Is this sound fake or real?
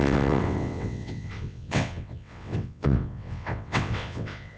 fake